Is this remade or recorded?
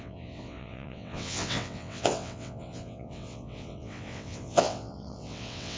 remade